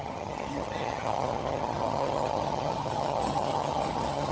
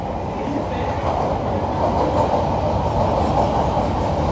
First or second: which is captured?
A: second